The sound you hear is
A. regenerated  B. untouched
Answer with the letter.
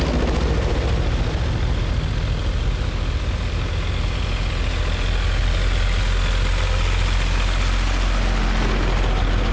B